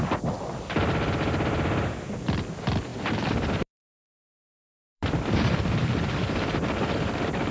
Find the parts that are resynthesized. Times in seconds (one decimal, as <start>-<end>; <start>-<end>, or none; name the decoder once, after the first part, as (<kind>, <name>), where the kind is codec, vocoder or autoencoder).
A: 2.9-6.6 (vocoder, BigVGAN v2)